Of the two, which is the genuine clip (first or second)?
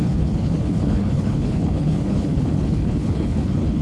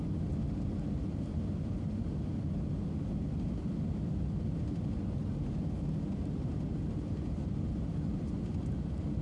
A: second